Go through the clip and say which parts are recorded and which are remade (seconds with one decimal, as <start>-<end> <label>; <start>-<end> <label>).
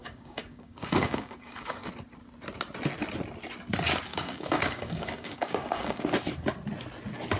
0.0-1.9 remade; 1.9-4.1 recorded; 4.1-6.0 remade; 6.0-7.4 recorded